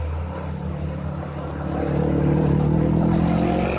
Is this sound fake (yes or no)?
no